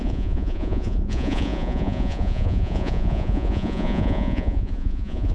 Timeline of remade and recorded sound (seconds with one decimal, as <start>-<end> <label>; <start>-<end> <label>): 0.0-5.3 remade

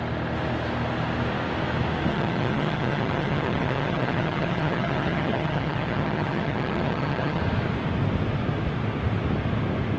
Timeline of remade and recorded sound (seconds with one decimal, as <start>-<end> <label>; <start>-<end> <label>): 0.0-2.1 recorded; 2.1-7.4 remade; 7.4-10.0 recorded

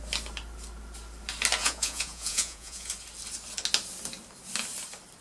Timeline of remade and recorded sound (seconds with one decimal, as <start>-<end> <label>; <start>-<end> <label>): 0.0-1.6 recorded; 1.6-2.9 remade; 2.9-5.2 recorded

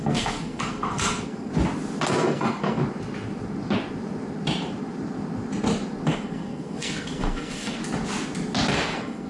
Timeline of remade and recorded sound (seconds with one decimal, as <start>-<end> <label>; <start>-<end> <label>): 0.0-1.5 remade; 1.5-2.1 recorded; 2.1-2.8 remade; 2.8-6.1 recorded; 6.1-7.8 remade; 7.8-8.7 recorded; 8.7-9.3 remade